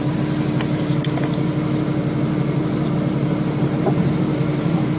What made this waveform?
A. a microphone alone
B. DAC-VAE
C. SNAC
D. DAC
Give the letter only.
A